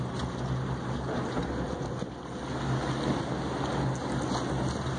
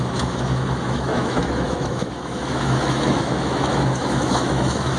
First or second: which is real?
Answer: first